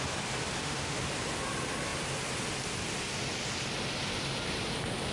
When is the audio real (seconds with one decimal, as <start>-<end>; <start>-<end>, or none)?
0.0-0.6; 1.1-5.1